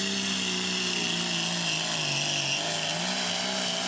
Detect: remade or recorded recorded